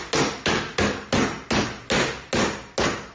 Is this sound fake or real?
real